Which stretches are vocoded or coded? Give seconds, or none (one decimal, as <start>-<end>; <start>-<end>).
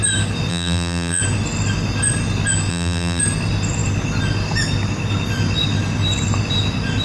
0.5-1.2; 2.7-3.2